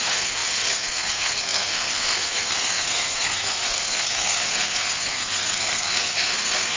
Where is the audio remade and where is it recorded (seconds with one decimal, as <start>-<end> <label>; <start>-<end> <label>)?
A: 0.0-6.8 remade